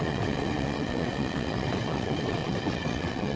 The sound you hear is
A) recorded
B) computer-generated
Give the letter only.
B